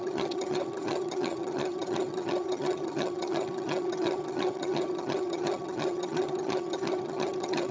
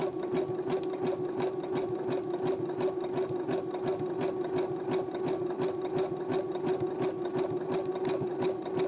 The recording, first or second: second